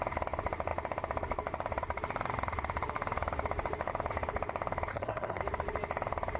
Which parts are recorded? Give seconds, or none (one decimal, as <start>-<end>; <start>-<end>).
0.0-4.9; 5.4-6.4